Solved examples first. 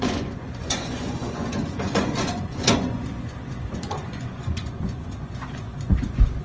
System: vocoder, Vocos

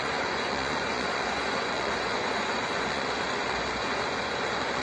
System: vocoder, Vocos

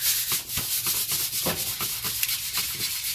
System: none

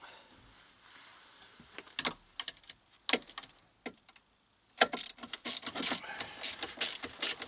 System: none